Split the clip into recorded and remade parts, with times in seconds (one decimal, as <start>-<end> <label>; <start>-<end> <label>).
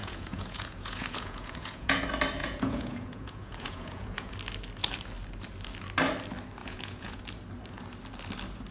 0.0-2.0 remade; 2.0-2.4 recorded; 2.4-4.3 remade; 4.3-6.6 recorded; 6.6-7.2 remade; 7.2-8.7 recorded